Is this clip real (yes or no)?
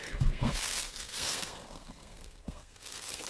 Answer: no